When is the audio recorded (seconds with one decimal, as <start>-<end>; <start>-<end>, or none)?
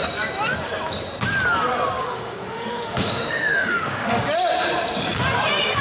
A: 0.0-2.0; 4.2-5.8